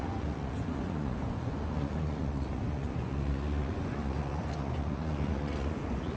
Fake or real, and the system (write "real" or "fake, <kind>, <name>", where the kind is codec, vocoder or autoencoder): fake, vocoder, Vocos